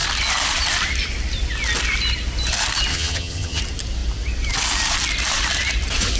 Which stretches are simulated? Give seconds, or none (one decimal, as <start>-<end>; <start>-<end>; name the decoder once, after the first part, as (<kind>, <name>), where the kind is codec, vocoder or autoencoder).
2.9-3.6 (vocoder, HiFi-GAN)